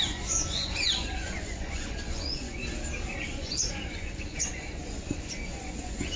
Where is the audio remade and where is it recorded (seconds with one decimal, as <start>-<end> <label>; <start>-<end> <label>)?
0.0-2.6 remade; 2.6-3.2 recorded; 3.2-6.2 remade